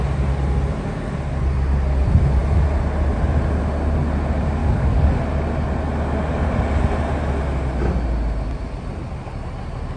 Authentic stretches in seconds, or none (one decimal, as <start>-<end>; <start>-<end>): 0.0-4.6; 5.2-10.0